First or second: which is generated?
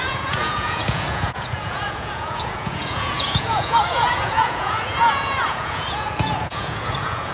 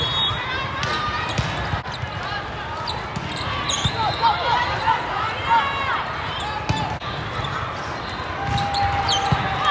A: first